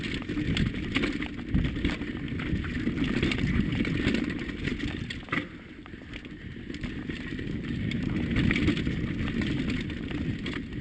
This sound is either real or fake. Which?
real